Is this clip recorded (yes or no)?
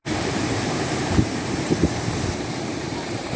no